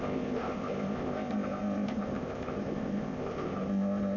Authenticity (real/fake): fake